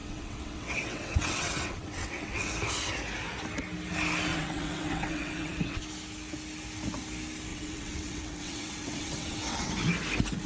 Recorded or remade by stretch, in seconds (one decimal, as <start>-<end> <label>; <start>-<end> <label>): 0.0-2.5 remade; 2.5-4.3 recorded; 4.3-5.8 remade; 5.8-7.5 recorded; 7.5-9.7 remade; 9.7-10.5 recorded